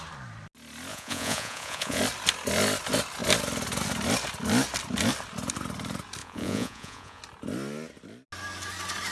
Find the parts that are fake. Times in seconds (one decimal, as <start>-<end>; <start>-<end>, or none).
0.9-2.0; 6.2-7.2